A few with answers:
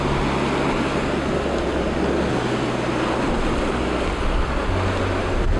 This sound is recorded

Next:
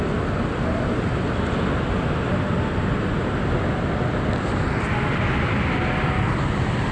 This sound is recorded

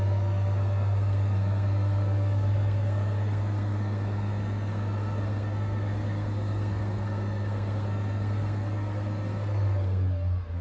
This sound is remade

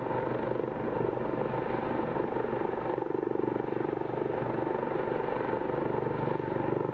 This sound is recorded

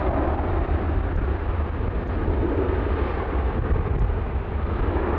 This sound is recorded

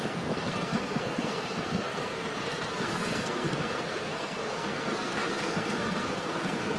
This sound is remade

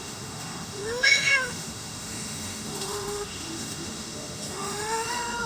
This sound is remade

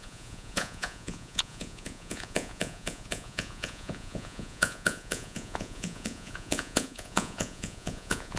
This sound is remade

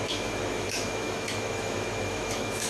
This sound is remade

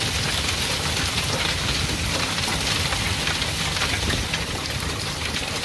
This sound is recorded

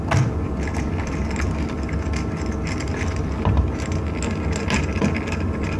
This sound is recorded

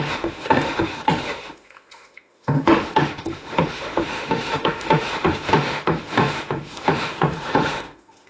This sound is remade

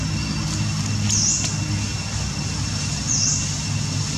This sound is recorded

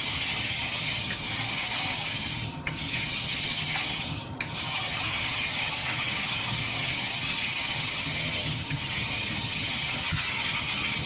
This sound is remade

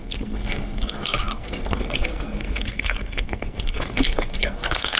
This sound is remade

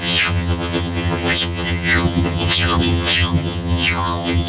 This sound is remade